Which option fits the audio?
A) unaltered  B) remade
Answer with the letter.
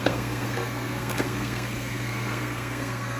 B